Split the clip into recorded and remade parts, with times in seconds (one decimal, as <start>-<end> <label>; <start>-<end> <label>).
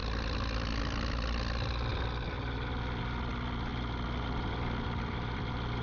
0.0-5.8 recorded